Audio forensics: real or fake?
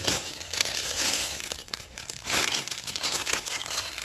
fake